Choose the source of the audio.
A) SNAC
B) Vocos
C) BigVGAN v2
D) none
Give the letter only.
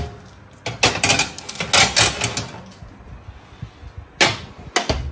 D